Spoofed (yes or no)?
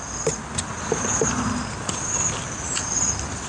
no